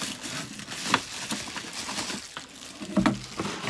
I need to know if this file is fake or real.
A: real